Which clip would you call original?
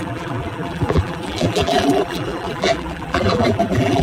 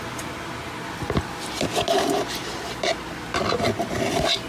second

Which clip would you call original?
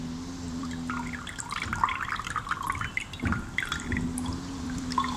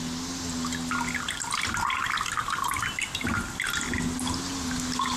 second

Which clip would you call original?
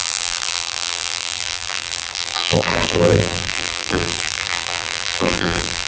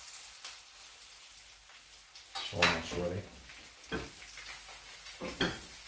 second